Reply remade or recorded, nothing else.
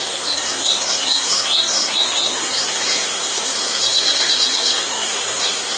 remade